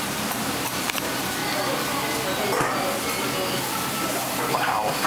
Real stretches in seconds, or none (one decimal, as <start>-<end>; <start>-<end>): 1.4-4.5